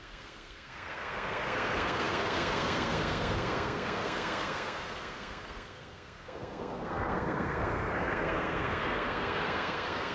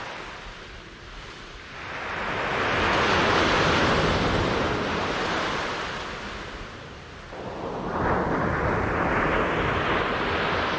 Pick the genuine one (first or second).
second